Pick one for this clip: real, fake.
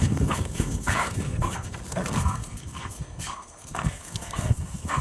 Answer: fake